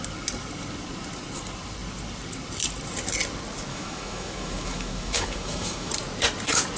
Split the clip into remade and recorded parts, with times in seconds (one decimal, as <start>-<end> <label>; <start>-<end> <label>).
0.0-3.7 recorded; 3.7-5.9 remade; 5.9-6.8 recorded

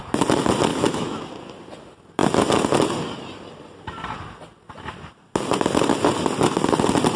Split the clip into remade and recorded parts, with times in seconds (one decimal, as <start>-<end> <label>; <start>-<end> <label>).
0.0-0.7 recorded; 0.7-1.2 remade; 1.2-7.2 recorded

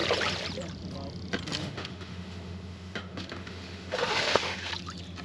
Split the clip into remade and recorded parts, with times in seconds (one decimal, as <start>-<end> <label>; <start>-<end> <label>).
0.0-1.6 recorded; 1.6-4.7 remade; 4.7-5.2 recorded

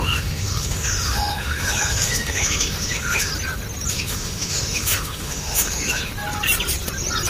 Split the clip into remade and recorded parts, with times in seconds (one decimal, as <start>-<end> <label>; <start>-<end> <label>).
0.0-3.3 remade; 3.3-3.9 recorded; 3.9-6.1 remade; 6.1-7.3 recorded

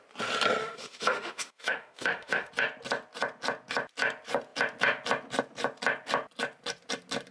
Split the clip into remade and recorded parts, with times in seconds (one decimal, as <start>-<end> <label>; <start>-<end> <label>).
0.0-0.6 recorded; 0.6-2.5 remade; 2.5-7.3 recorded

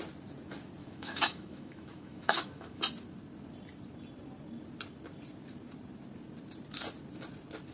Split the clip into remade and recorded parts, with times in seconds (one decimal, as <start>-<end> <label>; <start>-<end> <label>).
0.0-0.8 recorded; 0.8-2.8 remade; 2.8-7.7 recorded

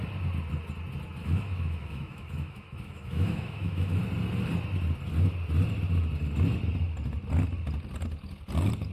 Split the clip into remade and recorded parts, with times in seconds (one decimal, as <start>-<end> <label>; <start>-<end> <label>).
0.0-1.2 recorded; 1.2-4.0 remade; 4.0-8.9 recorded

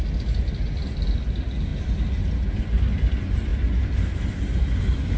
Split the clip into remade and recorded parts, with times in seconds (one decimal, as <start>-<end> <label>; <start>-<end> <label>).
0.0-5.2 recorded